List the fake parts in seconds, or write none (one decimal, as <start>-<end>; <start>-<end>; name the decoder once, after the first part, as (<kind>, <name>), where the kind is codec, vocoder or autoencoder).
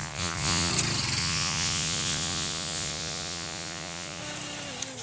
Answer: 0.0-0.7 (vocoder, Vocos); 1.2-4.2